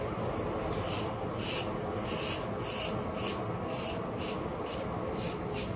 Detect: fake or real real